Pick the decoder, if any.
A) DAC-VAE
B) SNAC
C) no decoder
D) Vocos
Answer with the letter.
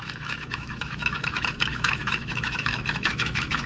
A